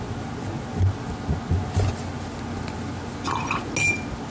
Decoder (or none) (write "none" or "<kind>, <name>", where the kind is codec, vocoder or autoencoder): none